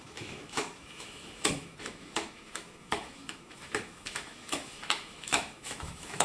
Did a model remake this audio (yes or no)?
yes